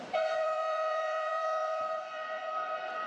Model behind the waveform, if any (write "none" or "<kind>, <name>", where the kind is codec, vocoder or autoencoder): vocoder, Vocos